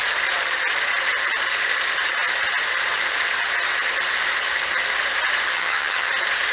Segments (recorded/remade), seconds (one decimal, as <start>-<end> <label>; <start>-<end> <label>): 0.0-5.5 recorded; 5.5-6.1 remade; 6.1-6.5 recorded